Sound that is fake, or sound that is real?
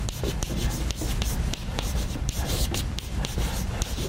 real